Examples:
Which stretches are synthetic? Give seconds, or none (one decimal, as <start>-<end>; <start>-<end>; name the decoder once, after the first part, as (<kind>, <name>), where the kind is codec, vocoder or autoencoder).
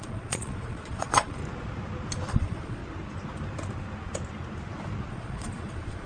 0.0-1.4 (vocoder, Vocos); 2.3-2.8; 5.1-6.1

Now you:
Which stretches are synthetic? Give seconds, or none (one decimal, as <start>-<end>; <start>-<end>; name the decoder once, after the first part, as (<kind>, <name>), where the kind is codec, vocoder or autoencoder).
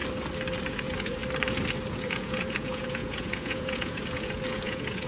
0.7-1.2 (vocoder, Vocos); 1.9-5.1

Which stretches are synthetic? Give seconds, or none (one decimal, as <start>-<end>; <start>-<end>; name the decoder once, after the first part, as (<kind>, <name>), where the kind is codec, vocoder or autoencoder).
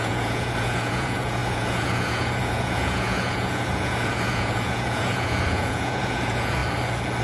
0.0-6.6 (vocoder, Vocos)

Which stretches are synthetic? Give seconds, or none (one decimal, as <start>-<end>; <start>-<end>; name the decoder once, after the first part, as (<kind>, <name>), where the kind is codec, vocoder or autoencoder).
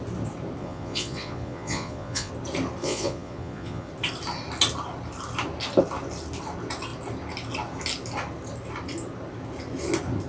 0.6-2.3 (vocoder, Vocos); 2.8-3.9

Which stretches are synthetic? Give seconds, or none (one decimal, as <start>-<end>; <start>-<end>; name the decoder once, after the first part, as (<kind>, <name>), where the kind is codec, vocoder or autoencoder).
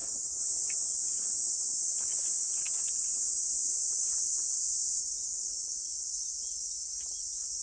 none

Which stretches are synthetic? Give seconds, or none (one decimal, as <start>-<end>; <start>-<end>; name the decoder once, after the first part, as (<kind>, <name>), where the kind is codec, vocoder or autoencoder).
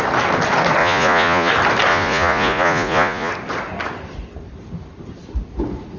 0.8-1.5 (vocoder, Vocos); 1.9-3.3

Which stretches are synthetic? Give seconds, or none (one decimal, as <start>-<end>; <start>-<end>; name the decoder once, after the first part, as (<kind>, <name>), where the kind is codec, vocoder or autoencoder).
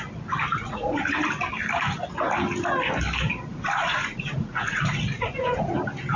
0.5-1.1 (vocoder, Vocos); 3.5-5.7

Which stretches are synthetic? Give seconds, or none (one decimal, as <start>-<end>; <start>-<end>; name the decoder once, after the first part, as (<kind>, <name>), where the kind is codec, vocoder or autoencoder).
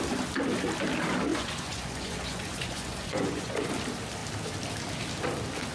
1.3-3.7 (vocoder, Vocos)